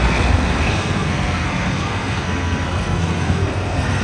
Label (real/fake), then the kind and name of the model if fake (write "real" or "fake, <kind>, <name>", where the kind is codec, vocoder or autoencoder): fake, codec, SNAC